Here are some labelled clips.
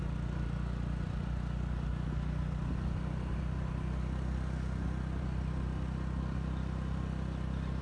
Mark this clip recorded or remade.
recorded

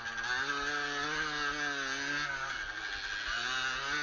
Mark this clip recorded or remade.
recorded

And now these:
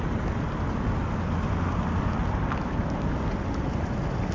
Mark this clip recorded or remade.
recorded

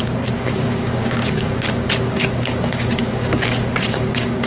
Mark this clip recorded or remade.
remade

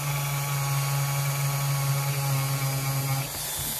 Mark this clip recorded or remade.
recorded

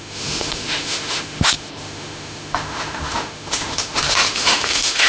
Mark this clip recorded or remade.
remade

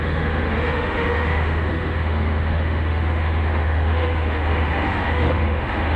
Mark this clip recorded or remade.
remade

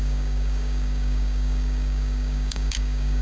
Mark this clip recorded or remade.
remade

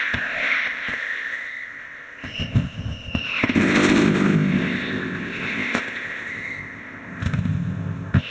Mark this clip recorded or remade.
remade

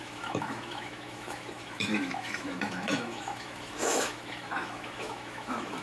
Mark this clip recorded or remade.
remade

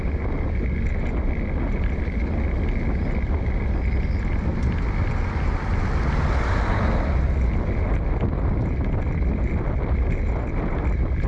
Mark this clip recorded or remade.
recorded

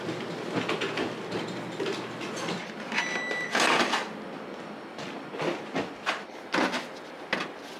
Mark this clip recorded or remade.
recorded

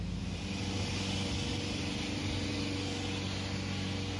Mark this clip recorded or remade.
recorded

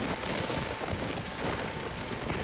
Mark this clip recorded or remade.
remade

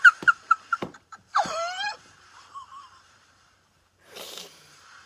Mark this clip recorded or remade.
remade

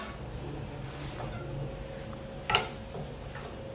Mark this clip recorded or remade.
recorded